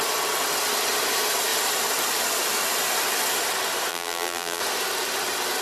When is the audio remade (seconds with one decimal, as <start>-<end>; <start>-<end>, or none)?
3.9-4.6